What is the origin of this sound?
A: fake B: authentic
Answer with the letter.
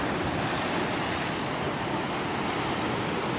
B